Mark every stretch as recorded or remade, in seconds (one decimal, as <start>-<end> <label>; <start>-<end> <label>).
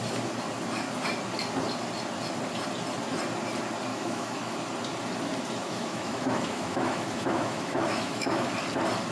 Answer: 0.0-3.9 recorded; 3.9-4.6 remade; 4.6-5.6 recorded; 5.6-8.5 remade; 8.5-9.1 recorded